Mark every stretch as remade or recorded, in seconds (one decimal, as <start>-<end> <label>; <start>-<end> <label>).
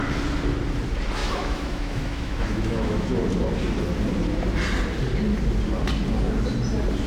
0.0-1.2 recorded; 1.2-3.1 remade; 3.1-7.1 recorded